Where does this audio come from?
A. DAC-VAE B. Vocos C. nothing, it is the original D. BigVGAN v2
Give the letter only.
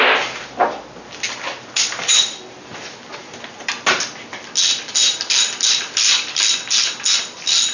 C